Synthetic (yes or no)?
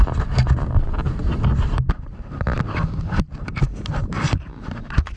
no